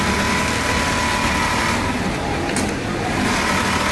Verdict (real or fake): real